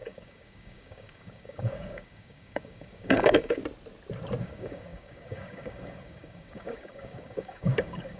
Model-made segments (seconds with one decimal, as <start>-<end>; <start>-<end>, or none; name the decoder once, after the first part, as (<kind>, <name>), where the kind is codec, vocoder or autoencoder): 0.0-3.6 (codec, DAC); 4.4-8.2